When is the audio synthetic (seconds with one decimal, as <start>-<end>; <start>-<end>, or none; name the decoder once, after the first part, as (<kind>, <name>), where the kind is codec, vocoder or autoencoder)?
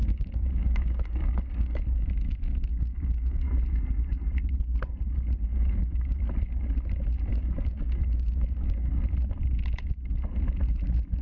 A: 0.0-3.5 (codec, DAC); 5.5-6.2; 7.3-8.9